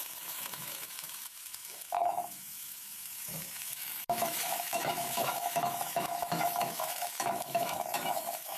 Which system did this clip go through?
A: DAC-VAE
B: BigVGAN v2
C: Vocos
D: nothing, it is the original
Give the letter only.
A